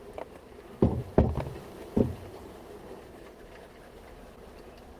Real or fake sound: real